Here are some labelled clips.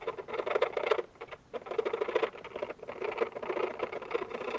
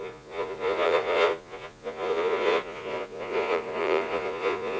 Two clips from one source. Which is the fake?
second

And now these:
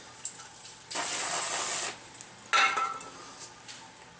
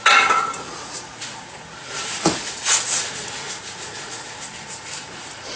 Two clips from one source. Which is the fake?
second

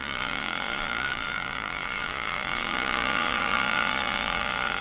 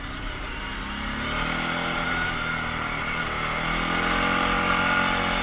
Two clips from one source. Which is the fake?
first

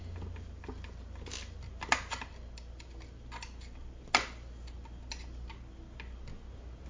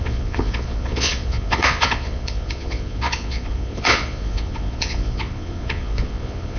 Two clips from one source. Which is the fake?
second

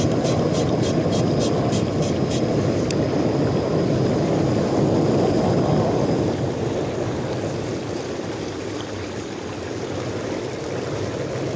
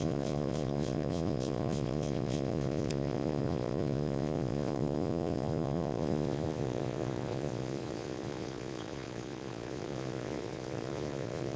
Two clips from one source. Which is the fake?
second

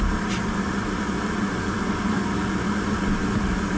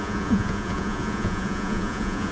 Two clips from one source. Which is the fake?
second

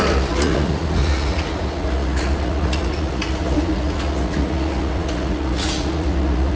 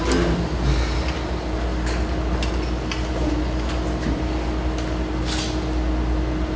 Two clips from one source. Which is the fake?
first